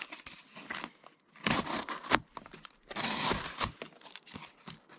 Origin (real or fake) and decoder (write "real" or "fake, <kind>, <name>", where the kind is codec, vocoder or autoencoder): real